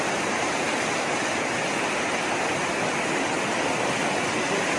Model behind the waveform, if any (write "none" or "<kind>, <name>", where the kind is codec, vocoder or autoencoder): none